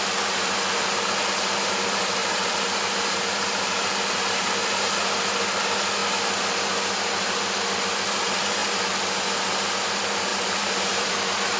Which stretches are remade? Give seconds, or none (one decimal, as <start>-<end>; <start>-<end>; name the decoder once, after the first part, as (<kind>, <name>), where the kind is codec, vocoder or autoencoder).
2.2-4.9 (vocoder, BigVGAN v2); 10.3-11.1